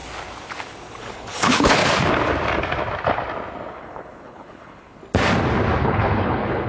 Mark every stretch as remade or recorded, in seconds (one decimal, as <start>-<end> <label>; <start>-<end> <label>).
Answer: 0.0-1.0 recorded; 1.0-1.8 remade; 1.8-3.7 recorded; 3.7-5.0 remade; 5.0-5.8 recorded; 5.8-6.7 remade